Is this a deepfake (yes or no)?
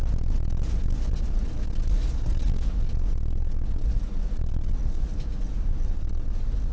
no